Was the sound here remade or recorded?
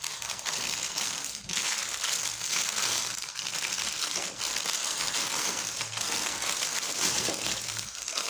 remade